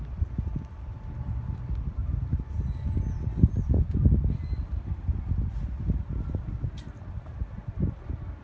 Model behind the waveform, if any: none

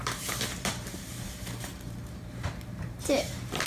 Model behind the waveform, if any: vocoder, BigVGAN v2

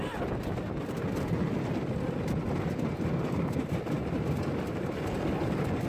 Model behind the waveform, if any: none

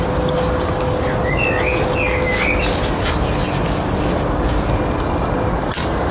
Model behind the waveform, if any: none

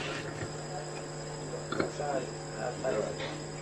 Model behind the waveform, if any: none